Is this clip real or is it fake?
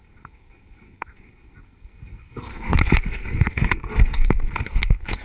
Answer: fake